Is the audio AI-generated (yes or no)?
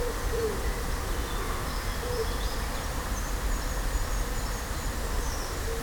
no